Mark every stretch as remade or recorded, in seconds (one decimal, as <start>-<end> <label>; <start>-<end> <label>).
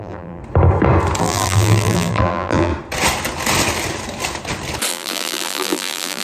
0.0-0.4 remade; 0.4-1.2 recorded; 1.2-2.7 remade; 2.7-4.9 recorded; 4.9-6.2 remade